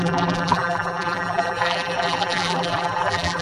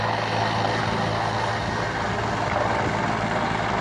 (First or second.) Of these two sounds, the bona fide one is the second